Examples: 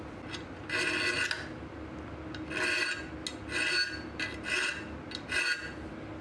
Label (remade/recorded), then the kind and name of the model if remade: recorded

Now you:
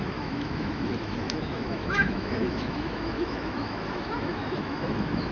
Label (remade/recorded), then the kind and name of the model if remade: remade, autoencoder, DAC-VAE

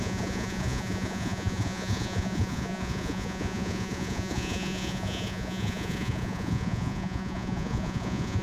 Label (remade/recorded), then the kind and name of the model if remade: remade, vocoder, Vocos